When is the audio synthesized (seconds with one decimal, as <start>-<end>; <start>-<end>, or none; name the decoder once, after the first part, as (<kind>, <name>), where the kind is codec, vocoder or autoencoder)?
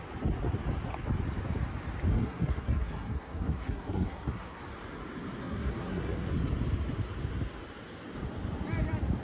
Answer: 2.1-4.6 (codec, SNAC); 5.4-6.3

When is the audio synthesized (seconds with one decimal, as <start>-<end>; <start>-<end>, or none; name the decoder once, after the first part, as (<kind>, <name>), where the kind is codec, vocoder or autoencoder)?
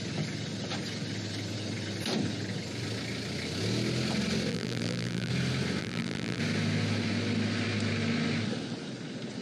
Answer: 4.5-5.3 (vocoder, BigVGAN v2); 5.8-6.4